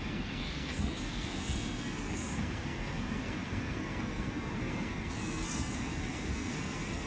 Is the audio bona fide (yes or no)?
no